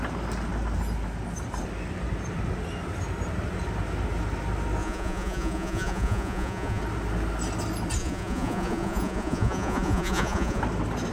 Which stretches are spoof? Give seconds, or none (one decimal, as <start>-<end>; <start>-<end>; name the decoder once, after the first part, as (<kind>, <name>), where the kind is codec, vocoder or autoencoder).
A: 4.8-6.8 (vocoder, Vocos); 8.0-10.6